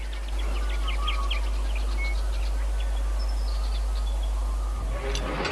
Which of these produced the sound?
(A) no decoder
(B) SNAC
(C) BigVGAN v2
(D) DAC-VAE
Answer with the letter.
A